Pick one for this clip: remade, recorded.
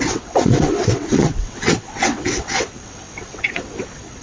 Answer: remade